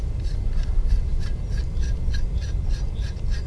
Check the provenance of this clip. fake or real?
real